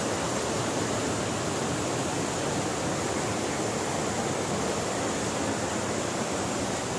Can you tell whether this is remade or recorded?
recorded